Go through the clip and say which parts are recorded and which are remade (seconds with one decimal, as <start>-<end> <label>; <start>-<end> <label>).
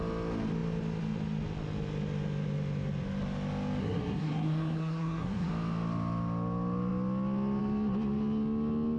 0.0-3.8 recorded; 3.8-5.5 remade; 5.5-9.0 recorded